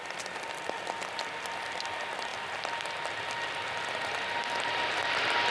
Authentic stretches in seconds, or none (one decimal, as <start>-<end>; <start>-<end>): 0.0-5.5